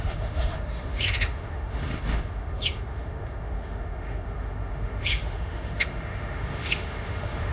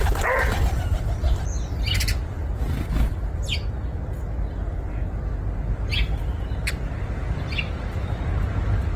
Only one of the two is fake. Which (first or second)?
first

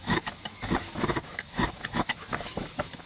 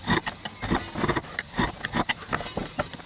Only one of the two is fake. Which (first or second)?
first